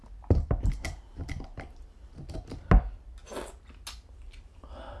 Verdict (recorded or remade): recorded